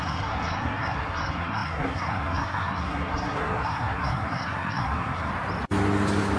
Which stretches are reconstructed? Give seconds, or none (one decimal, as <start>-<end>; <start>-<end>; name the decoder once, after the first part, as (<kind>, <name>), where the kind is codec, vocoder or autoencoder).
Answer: 0.0-5.3 (codec, SNAC)